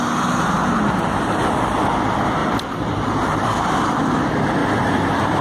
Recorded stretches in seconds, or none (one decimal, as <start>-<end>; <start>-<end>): 0.0-2.4; 3.8-4.6